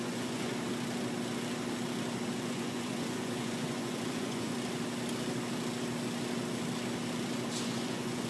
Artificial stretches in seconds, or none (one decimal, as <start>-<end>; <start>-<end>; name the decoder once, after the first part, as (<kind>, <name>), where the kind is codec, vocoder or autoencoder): 0.0-0.5 (vocoder, Vocos); 2.4-4.5; 7.6-8.3